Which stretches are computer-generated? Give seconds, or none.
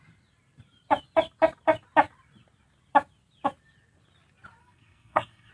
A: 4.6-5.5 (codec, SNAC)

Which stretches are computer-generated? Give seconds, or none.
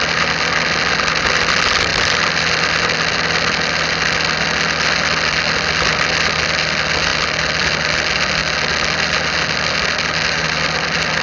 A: none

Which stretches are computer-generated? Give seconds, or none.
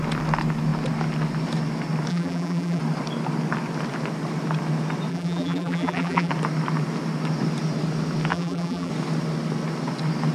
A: 2.1-2.8 (vocoder, BigVGAN v2); 5.1-6.3; 8.3-8.9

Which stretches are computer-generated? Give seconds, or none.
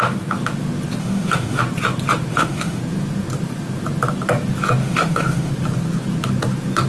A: 1.0-1.6 (autoencoder, DAC-VAE); 2.3-2.8; 4.8-5.5